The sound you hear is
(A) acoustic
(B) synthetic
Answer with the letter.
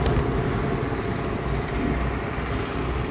A